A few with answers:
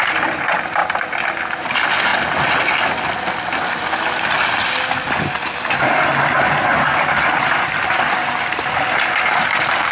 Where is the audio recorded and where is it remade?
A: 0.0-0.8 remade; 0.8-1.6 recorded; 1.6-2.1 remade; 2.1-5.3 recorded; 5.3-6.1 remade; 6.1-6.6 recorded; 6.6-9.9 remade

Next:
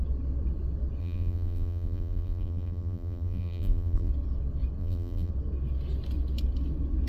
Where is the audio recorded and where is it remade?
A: 0.0-1.0 recorded; 1.0-4.1 remade; 4.1-4.8 recorded; 4.8-5.3 remade; 5.3-7.1 recorded

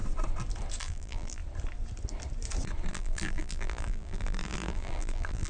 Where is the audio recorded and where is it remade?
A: 0.0-0.8 recorded; 0.8-1.4 remade; 1.4-2.9 recorded; 2.9-5.5 remade

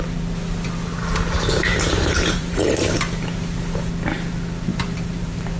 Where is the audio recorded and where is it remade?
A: 0.0-1.7 recorded; 1.7-2.7 remade; 2.7-4.7 recorded; 4.7-5.6 remade

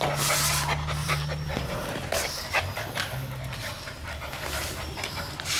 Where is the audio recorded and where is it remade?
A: 0.0-1.0 recorded; 1.0-2.3 remade; 2.3-5.6 recorded